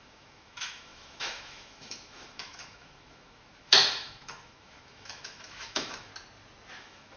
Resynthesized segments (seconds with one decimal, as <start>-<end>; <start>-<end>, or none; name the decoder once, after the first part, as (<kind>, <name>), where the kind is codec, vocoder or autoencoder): 0.0-6.1 (autoencoder, DAC-VAE); 6.8-7.2